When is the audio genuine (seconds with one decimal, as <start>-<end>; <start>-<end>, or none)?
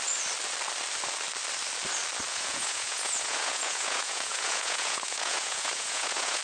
0.0-2.3